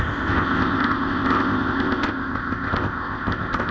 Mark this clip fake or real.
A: fake